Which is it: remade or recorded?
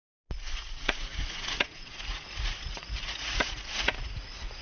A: remade